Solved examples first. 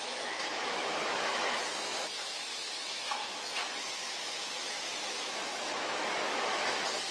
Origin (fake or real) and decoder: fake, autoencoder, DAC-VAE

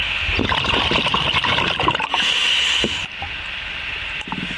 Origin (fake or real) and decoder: real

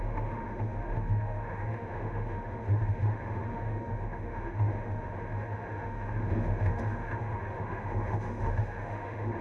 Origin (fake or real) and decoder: fake, autoencoder, DAC-VAE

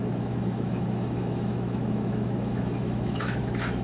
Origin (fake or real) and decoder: fake, autoencoder, DAC-VAE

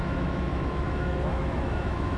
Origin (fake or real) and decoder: fake, autoencoder, DAC-VAE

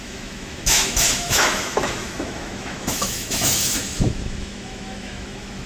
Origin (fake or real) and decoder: fake, autoencoder, DAC-VAE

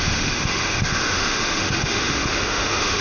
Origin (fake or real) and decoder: fake, autoencoder, DAC-VAE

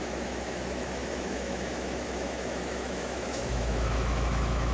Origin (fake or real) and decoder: fake, autoencoder, DAC-VAE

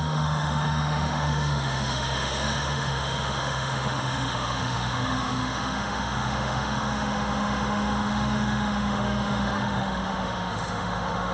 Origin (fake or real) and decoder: fake, autoencoder, DAC-VAE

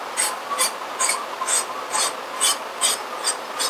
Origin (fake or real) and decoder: real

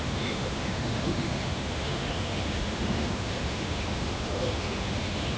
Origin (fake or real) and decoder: fake, autoencoder, DAC-VAE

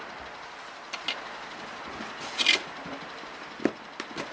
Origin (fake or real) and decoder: real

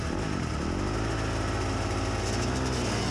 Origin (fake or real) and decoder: real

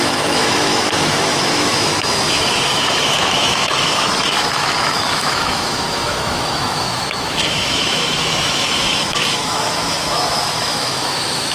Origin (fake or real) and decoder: fake, autoencoder, DAC-VAE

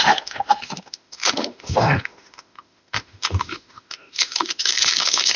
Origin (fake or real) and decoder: fake, autoencoder, DAC-VAE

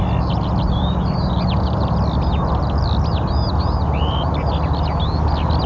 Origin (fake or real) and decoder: real